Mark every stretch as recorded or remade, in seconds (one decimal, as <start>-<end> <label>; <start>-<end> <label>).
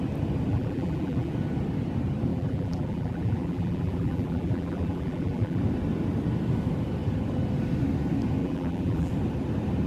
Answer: 0.0-0.5 recorded; 0.5-1.3 remade; 1.3-2.3 recorded; 2.3-5.6 remade; 5.6-8.4 recorded; 8.4-9.1 remade; 9.1-9.9 recorded